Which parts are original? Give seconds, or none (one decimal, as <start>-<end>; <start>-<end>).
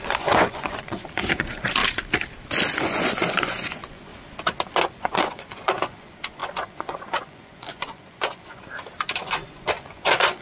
1.8-2.8; 4.1-4.8; 8.6-9.2